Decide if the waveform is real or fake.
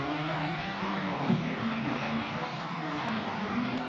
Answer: fake